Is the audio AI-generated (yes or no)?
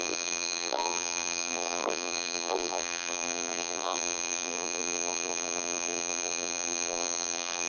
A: yes